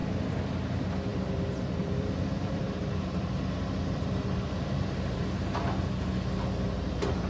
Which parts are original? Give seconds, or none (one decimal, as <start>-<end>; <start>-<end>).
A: 0.7-1.1; 5.5-7.3